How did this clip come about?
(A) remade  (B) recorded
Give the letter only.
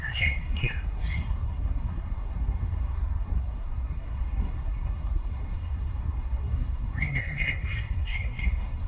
A